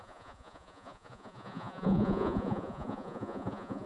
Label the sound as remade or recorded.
remade